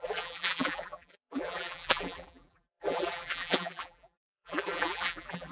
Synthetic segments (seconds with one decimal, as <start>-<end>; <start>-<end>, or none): 0.0-5.5